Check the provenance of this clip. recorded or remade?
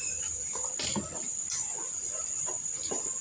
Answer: recorded